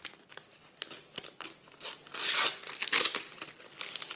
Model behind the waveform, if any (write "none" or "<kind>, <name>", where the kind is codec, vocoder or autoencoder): none